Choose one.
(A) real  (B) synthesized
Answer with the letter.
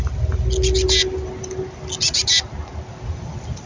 A